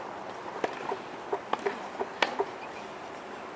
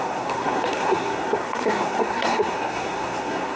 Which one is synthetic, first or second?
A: second